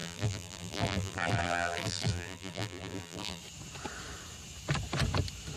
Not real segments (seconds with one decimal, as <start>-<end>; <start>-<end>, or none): 0.0-3.4